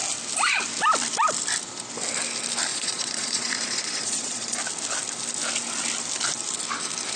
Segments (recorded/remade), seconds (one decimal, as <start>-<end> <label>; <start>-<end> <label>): 0.0-2.7 recorded; 2.7-4.6 remade; 4.6-7.2 recorded